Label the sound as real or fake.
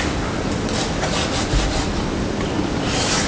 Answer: real